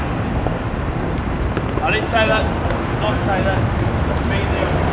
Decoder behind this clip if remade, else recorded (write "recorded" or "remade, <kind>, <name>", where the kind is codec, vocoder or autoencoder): recorded